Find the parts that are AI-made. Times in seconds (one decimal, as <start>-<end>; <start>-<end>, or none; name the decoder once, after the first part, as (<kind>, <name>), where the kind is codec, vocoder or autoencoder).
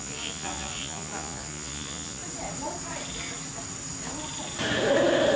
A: 0.0-2.2 (vocoder, Vocos)